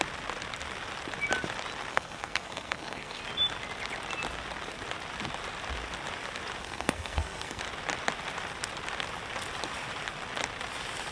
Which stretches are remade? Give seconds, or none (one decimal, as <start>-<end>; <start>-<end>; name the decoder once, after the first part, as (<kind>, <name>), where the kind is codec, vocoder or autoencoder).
1.9-3.2 (codec, SNAC); 6.6-7.6